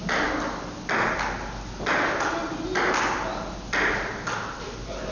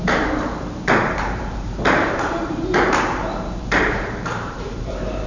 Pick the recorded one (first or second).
first